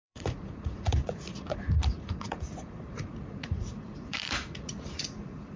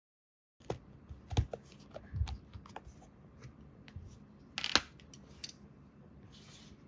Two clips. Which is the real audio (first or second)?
second